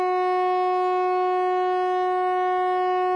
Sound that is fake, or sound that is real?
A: real